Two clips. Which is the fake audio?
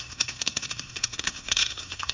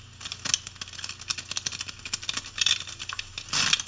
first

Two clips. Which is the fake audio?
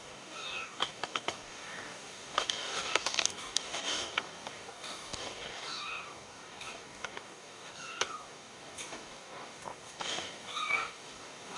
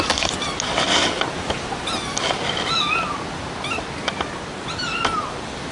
first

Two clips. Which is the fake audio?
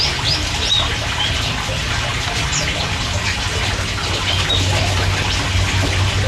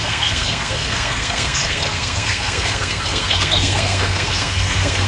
second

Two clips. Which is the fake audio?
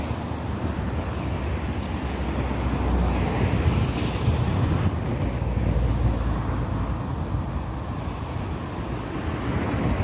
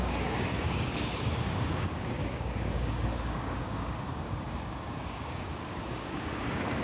second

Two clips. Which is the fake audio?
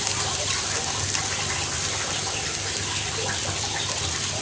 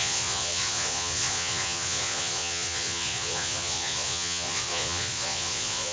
second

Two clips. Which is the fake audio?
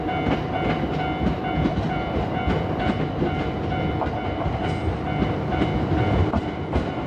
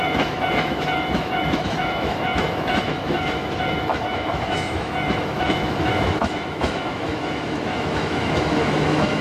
second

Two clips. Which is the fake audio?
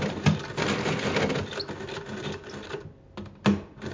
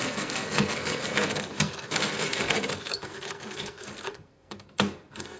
second